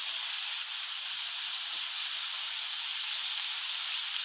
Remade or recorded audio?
recorded